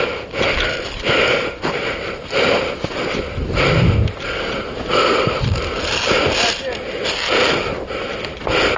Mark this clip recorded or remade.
recorded